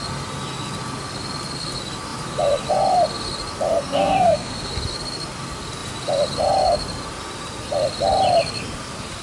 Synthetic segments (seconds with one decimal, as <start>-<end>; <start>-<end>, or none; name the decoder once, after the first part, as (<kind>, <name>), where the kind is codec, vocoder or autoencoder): 3.7-4.7 (codec, SNAC)